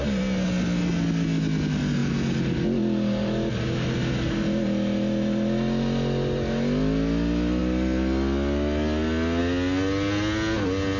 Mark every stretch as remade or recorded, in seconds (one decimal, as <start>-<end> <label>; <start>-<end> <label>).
0.0-11.0 recorded